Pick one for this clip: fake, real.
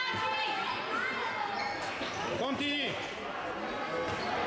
real